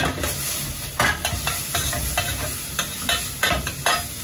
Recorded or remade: recorded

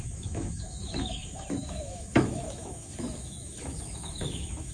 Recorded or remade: remade